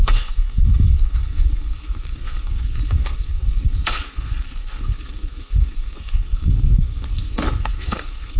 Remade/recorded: remade